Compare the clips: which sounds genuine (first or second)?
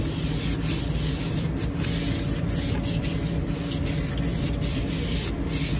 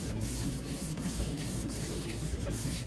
first